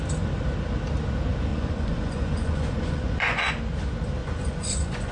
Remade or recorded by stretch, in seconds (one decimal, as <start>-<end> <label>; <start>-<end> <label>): 0.0-1.5 recorded; 1.5-3.5 remade; 3.5-4.2 recorded; 4.2-5.1 remade